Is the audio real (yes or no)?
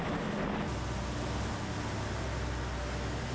yes